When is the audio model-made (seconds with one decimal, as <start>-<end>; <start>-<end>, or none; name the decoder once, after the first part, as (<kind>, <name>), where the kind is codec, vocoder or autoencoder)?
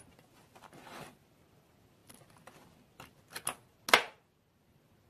none